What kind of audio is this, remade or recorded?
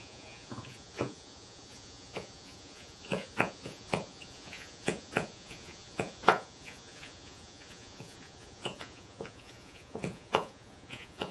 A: remade